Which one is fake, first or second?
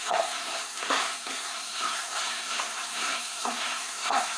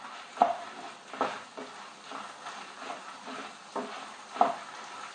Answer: first